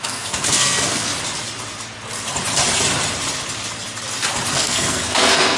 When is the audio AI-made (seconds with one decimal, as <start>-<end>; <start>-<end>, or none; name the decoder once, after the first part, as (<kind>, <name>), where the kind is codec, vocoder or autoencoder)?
0.0-1.1 (codec, SNAC); 4.5-5.6